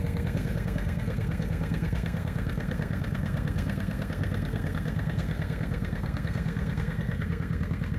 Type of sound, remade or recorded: remade